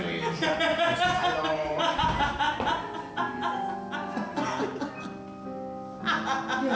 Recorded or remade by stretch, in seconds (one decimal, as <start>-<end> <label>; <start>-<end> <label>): 0.0-6.8 recorded